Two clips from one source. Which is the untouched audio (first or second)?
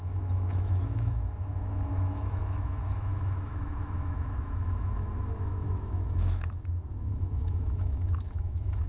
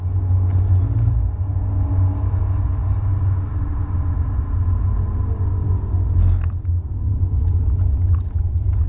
second